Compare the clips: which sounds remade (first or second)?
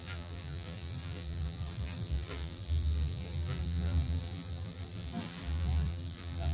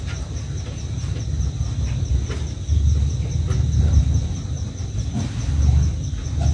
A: first